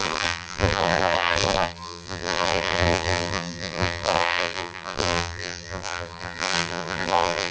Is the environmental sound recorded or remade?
remade